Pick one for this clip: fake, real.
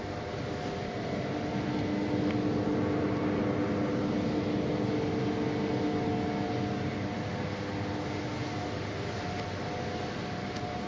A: real